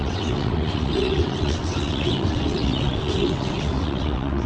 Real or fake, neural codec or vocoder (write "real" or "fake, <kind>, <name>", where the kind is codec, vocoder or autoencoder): fake, vocoder, WaveNeXt